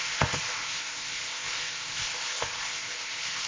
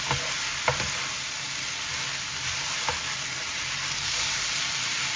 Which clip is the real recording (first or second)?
second